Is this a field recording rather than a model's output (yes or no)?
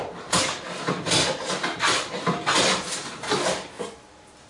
yes